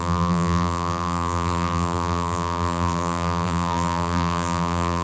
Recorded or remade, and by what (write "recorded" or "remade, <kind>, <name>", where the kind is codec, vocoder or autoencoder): remade, vocoder, BigVGAN v2